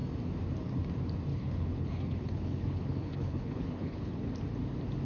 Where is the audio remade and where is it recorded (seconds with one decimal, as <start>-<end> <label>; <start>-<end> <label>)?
0.0-1.3 recorded; 1.3-4.3 remade; 4.3-5.0 recorded